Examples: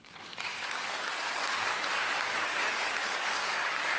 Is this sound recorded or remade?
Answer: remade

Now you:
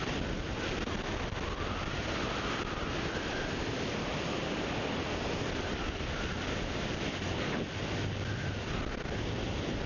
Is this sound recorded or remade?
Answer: recorded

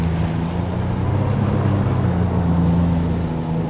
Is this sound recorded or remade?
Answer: recorded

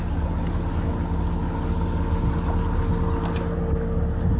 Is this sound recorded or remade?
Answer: recorded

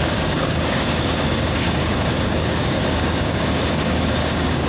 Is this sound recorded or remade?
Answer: remade